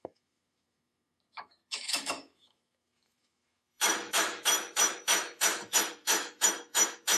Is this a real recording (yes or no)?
no